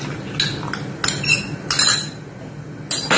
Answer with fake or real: real